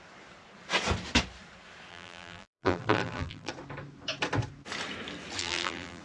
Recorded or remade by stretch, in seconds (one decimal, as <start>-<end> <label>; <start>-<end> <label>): 0.0-1.9 recorded; 1.9-3.5 remade; 3.5-5.4 recorded; 5.4-6.0 remade